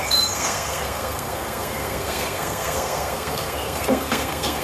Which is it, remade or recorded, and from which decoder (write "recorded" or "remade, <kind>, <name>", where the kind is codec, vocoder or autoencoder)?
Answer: remade, codec, SNAC